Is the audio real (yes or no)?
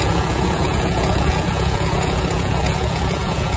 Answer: no